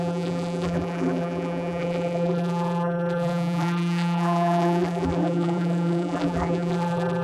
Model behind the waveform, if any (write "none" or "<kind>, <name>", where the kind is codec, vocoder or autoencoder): vocoder, BigVGAN v2